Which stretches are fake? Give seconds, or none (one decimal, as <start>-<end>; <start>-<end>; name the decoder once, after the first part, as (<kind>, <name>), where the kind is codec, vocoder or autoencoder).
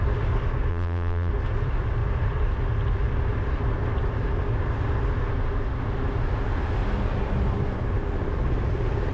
0.7-1.3 (vocoder, BigVGAN v2)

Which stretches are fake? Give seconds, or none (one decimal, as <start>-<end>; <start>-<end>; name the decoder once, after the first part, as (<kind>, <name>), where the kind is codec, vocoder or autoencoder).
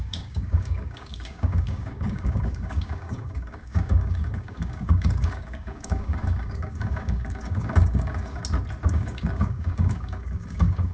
0.0-8.4 (codec, DAC); 8.9-10.9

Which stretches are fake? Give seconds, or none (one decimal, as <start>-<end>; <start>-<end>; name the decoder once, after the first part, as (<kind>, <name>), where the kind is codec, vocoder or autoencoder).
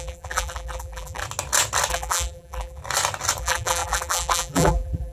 0.0-1.2 (vocoder, BigVGAN v2); 1.9-2.8; 3.4-5.1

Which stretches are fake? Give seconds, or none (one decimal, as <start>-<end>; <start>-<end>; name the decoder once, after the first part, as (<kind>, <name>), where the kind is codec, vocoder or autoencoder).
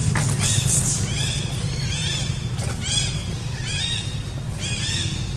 none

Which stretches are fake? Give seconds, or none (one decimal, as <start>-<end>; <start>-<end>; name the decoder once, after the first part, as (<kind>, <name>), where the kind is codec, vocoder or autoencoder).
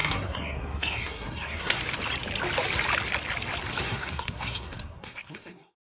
0.0-1.8 (codec, SNAC); 3.8-5.8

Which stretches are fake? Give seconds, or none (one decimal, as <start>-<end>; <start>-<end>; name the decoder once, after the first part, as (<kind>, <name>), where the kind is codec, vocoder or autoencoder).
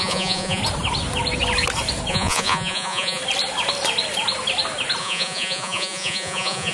0.0-0.6 (vocoder, Vocos); 2.1-3.2; 5.0-6.7